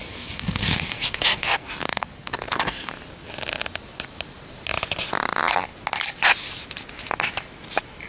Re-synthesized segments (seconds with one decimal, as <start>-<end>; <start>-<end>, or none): 0.0-2.9